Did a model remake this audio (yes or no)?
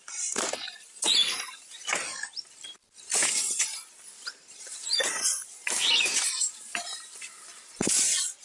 no